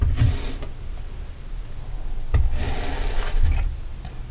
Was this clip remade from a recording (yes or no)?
no